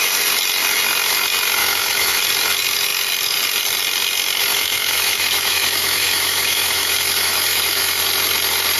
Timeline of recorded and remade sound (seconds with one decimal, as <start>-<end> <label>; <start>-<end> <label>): 0.0-1.6 recorded; 1.6-2.2 remade; 2.2-4.5 recorded; 4.5-8.0 remade; 8.0-8.8 recorded